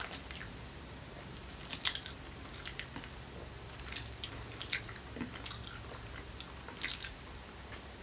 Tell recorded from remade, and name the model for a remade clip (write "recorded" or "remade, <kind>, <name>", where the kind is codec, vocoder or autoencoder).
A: recorded